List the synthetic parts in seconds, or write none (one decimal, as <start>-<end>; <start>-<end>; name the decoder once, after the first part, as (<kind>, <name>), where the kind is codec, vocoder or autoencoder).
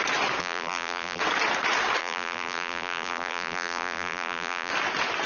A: 0.4-1.2 (vocoder, BigVGAN v2); 2.0-4.7